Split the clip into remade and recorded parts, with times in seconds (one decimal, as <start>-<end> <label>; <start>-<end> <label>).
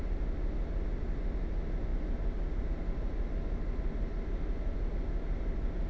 0.0-5.9 recorded